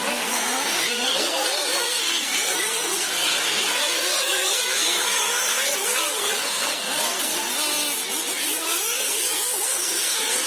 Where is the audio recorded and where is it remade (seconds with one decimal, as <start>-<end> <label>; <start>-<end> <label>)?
0.0-7.5 remade; 7.5-8.3 recorded; 8.3-10.5 remade